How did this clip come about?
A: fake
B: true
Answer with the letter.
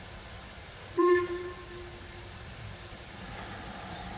A